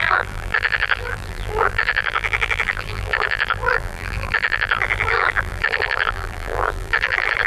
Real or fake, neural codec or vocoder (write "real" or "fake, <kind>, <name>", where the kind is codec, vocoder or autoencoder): fake, vocoder, BigVGAN v2